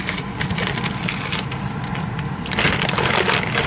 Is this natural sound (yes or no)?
yes